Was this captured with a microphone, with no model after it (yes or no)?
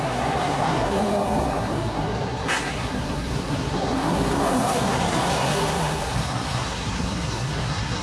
no